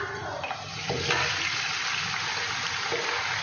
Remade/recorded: recorded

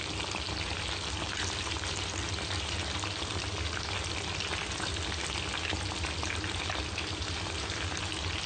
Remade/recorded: recorded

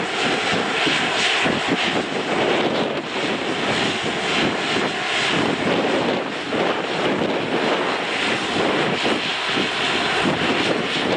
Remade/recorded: recorded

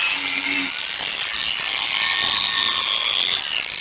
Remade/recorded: recorded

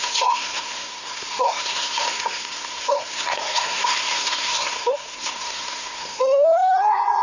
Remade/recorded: remade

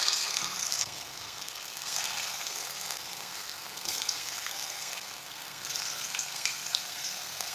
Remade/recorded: remade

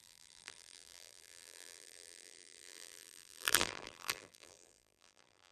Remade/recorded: remade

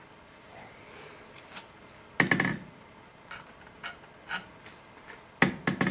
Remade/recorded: recorded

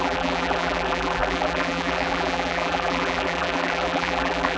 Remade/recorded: remade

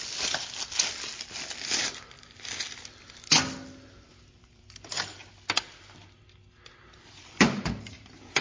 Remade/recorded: recorded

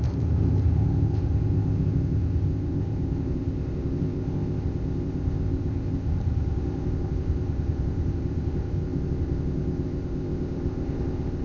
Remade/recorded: remade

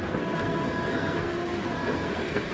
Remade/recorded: remade